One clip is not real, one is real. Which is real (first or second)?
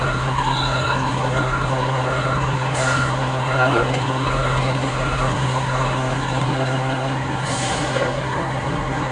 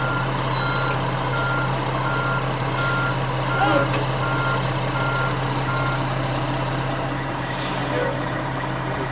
second